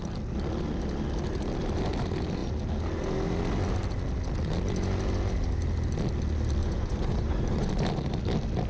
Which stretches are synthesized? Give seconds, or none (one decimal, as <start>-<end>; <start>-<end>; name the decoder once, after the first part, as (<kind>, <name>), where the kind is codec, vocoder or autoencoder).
6.6-7.7 (vocoder, Vocos)